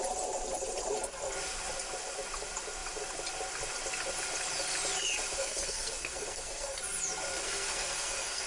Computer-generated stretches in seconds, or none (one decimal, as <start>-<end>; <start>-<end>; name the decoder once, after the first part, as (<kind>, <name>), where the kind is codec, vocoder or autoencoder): 5.4-6.8 (codec, SNAC); 7.3-8.5